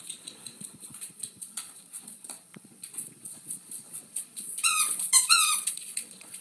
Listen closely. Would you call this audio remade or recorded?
remade